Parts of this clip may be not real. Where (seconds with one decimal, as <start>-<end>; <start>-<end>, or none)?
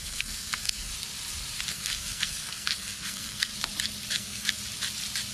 0.0-0.9; 1.7-3.5; 4.1-4.6